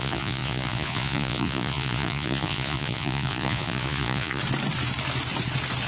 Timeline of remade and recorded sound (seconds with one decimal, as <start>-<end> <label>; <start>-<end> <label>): 0.0-4.4 remade; 4.4-5.9 recorded